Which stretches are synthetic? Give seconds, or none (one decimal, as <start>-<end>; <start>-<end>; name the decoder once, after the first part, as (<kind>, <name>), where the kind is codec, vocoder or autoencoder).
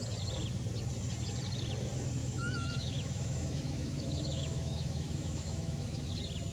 2.2-6.1 (autoencoder, DAC-VAE)